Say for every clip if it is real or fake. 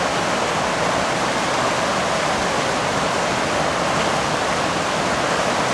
real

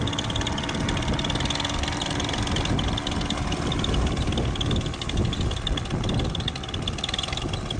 real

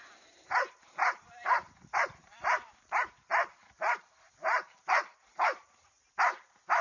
fake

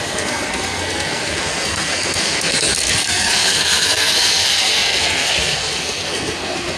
fake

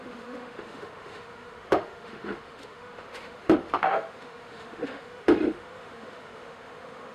fake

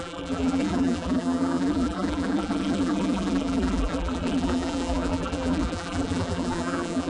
fake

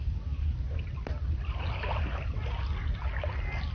real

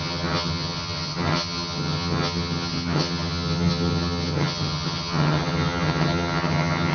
fake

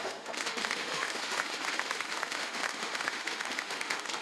fake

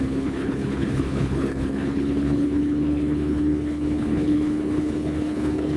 fake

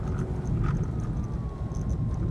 real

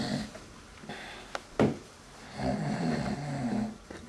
real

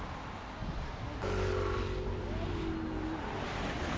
real